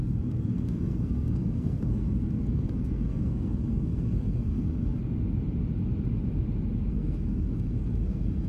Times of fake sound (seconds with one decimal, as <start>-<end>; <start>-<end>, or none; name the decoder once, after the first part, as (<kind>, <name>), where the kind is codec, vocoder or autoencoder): 0.0-5.0 (codec, SNAC); 6.9-8.5